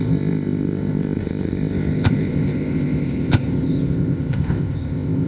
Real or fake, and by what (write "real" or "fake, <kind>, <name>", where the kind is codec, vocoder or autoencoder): fake, codec, ZipCodec